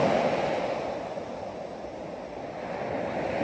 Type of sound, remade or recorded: recorded